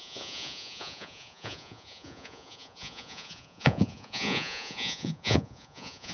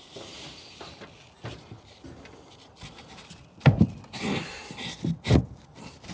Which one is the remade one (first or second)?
first